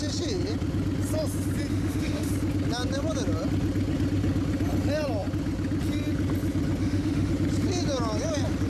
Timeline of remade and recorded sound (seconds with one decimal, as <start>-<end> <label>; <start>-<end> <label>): 0.0-1.7 recorded; 1.7-2.3 remade; 2.3-6.8 recorded; 6.8-7.3 remade; 7.3-8.7 recorded